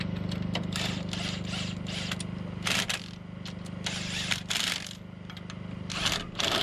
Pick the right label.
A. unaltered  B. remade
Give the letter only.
A